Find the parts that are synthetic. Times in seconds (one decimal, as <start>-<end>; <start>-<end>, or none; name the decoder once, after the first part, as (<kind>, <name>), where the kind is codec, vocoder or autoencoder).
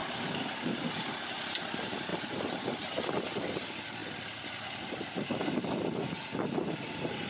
0.0-0.9 (codec, DAC)